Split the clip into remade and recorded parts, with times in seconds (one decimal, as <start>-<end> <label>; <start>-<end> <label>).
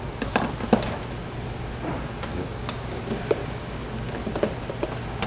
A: 0.0-2.3 recorded; 2.3-3.0 remade; 3.0-3.4 recorded; 3.4-3.9 remade; 3.9-5.3 recorded